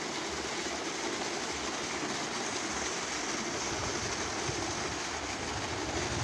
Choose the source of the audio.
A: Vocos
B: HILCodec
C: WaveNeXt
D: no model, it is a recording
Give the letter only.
D